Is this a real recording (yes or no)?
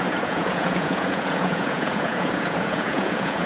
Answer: no